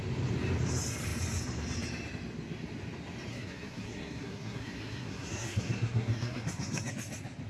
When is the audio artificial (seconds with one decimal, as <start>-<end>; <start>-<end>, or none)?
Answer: 3.3-6.9